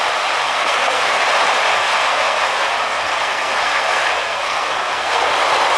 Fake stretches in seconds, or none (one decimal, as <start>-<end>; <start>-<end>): 0.4-1.2; 1.7-5.2